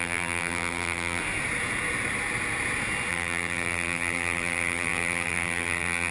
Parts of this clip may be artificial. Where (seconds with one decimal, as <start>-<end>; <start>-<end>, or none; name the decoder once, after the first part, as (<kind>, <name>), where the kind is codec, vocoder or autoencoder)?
0.0-1.2 (vocoder, BigVGAN v2); 3.1-6.1